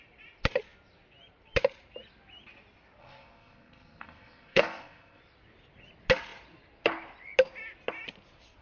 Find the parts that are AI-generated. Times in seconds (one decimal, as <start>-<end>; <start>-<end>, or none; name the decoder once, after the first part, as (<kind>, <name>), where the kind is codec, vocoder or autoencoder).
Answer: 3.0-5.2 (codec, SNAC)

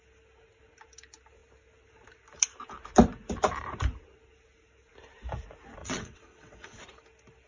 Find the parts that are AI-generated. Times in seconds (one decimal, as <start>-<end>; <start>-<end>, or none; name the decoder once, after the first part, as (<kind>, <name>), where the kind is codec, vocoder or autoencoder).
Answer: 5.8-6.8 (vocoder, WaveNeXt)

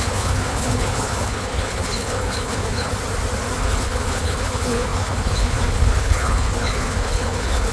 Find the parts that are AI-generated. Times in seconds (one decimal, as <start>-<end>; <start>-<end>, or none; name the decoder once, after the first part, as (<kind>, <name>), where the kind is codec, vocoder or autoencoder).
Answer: 0.0-2.9 (codec, HILCodec); 3.6-7.7

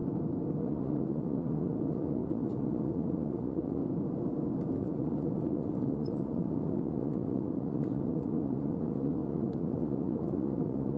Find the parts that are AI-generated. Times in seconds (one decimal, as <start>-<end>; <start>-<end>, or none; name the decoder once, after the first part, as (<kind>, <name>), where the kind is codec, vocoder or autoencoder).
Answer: 0.6-3.8 (vocoder, Vocos); 4.8-11.0